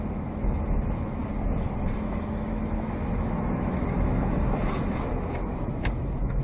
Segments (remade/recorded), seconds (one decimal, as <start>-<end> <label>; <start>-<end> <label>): 0.0-1.2 remade; 1.2-2.0 recorded; 2.0-6.4 remade